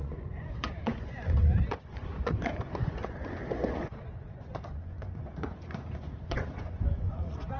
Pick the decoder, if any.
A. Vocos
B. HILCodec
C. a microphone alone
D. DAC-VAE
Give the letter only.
A